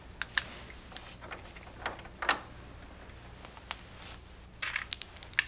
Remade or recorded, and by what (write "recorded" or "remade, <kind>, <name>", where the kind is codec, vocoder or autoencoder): recorded